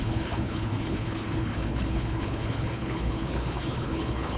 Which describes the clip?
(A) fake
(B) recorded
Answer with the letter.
A